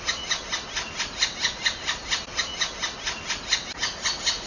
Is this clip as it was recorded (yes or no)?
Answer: yes